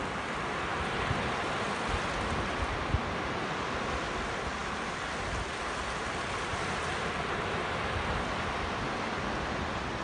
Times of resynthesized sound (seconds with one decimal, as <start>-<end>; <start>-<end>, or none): 0.7-2.1; 6.5-7.1